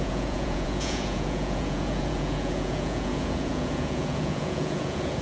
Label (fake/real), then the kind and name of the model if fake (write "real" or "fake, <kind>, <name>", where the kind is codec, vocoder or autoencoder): fake, vocoder, Vocos